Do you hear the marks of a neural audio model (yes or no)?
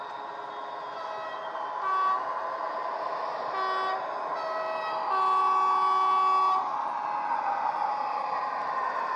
no